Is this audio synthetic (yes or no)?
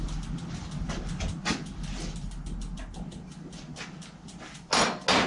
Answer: no